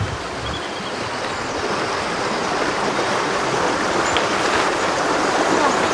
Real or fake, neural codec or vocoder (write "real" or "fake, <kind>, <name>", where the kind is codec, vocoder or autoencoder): real